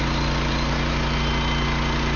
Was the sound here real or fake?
real